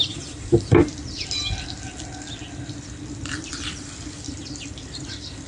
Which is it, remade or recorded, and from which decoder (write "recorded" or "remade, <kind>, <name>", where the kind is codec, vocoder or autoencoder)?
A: remade, vocoder, BigVGAN v2